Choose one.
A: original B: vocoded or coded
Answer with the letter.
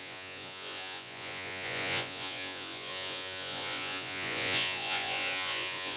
B